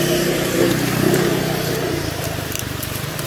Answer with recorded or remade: remade